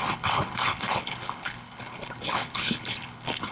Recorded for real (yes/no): no